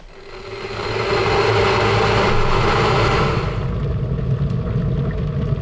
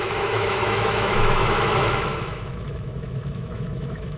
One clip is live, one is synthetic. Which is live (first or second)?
first